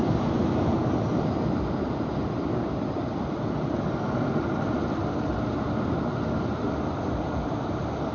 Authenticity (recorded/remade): recorded